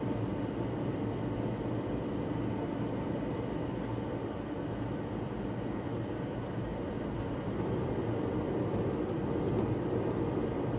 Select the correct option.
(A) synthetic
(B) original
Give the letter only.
B